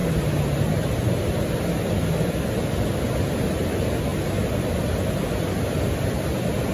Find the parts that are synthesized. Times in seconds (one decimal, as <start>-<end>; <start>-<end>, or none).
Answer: none